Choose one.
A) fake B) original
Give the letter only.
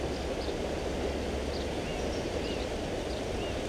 B